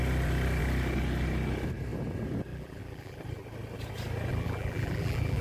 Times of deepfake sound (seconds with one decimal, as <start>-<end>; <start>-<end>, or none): 2.5-3.2; 4.3-5.4

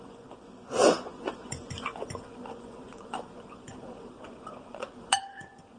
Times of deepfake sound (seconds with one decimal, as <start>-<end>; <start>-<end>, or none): 0.0-5.8

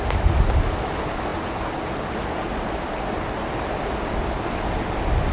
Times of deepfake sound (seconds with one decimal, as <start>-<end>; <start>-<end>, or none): none

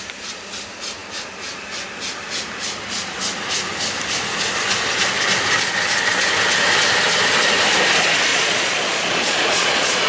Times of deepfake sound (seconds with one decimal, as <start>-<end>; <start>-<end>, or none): 8.3-10.1

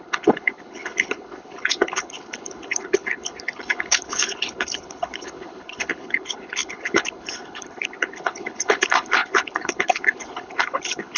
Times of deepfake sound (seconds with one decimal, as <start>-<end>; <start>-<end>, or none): 0.0-11.2